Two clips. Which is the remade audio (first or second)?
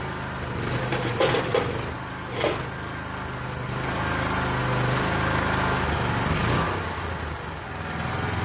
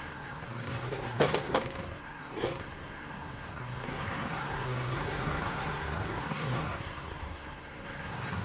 second